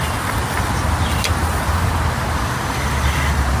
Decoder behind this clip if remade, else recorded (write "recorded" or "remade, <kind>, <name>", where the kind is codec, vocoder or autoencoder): recorded